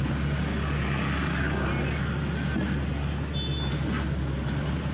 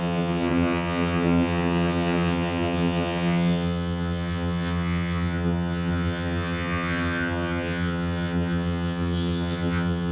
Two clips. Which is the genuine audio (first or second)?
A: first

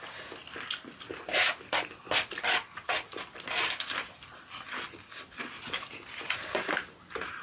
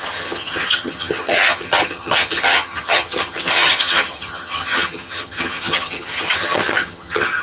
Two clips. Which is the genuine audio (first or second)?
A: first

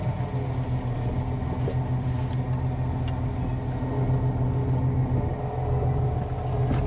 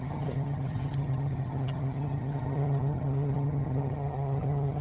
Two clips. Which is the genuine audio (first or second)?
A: first